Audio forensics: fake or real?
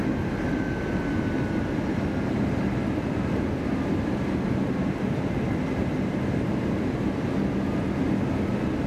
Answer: real